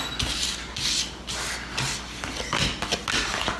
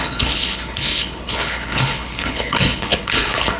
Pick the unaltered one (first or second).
first